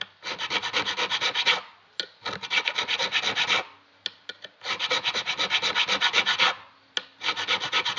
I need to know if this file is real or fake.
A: real